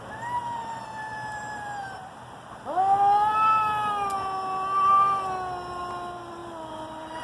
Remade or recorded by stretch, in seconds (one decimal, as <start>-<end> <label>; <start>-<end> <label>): 0.0-7.2 recorded